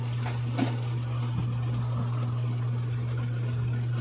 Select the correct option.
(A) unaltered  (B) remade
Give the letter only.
A